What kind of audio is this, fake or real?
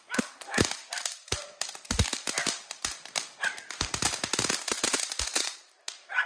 real